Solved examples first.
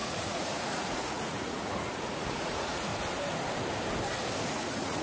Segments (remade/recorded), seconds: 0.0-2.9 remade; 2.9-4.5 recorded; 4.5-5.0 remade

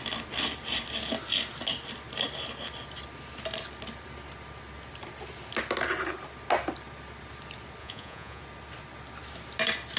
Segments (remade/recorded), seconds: 0.0-7.8 recorded; 7.8-8.4 remade; 8.4-10.0 recorded